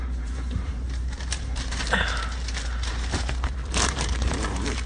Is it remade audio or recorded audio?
remade